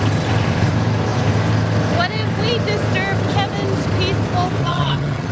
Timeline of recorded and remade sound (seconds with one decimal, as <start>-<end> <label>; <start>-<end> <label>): 0.0-4.6 recorded; 4.6-5.3 remade